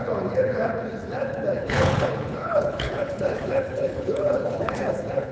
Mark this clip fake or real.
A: fake